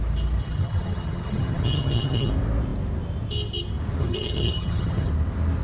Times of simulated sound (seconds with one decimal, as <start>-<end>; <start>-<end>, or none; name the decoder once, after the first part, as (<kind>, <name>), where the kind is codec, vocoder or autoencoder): 0.4-2.3 (vocoder, HiFi-GAN); 4.0-5.1